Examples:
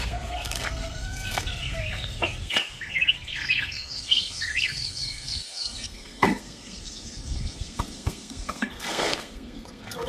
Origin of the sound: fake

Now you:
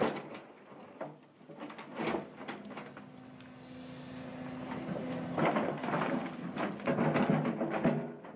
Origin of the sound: real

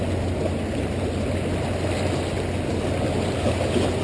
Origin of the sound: real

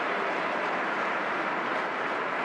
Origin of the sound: fake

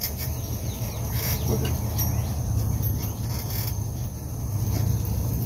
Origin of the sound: real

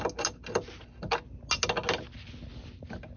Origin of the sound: real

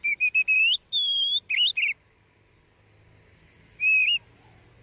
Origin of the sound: real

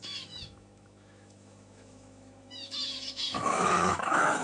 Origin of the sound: fake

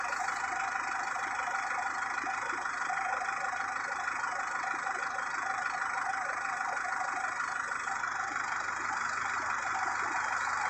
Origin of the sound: real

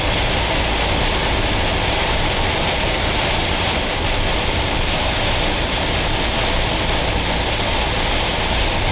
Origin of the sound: real